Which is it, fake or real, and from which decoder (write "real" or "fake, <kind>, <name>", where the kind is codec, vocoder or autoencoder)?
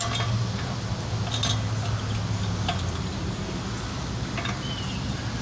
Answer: real